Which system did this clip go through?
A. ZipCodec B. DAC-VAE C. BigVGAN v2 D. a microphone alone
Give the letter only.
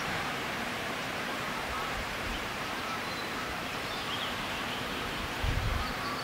C